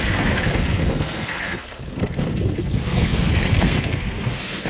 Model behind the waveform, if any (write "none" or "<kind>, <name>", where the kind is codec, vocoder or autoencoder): codec, SNAC